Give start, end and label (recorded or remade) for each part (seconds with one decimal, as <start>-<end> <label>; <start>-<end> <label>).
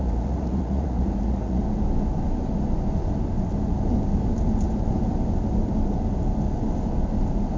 0.0-1.6 remade; 1.6-7.6 recorded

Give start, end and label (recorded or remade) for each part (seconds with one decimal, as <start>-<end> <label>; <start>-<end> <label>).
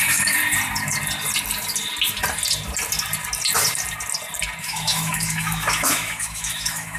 0.0-0.4 remade; 0.4-4.6 recorded; 4.6-7.0 remade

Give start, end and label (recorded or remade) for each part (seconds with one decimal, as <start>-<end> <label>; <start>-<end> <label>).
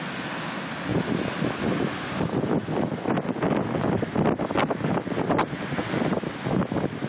0.0-7.1 recorded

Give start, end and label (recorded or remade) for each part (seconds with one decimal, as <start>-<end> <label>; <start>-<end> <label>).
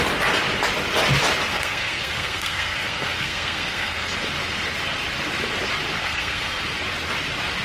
0.0-1.5 recorded; 1.5-4.1 remade; 4.1-6.0 recorded; 6.0-6.6 remade; 6.6-7.6 recorded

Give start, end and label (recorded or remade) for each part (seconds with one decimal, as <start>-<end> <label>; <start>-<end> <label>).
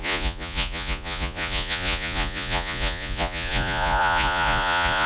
0.0-5.1 remade